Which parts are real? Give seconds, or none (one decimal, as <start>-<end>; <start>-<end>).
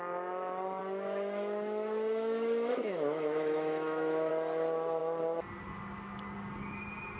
0.0-0.8; 4.3-7.2